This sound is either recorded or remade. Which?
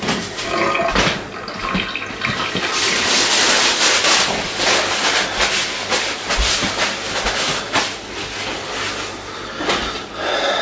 recorded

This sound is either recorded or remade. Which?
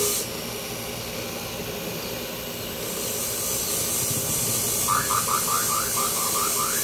recorded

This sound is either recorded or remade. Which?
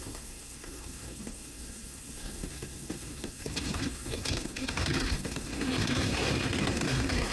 remade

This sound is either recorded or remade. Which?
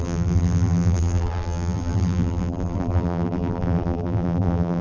remade